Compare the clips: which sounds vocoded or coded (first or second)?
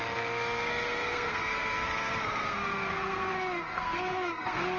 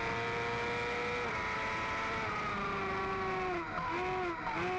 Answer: first